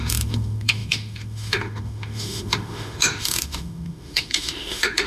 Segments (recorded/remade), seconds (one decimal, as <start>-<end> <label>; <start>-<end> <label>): 0.0-5.1 remade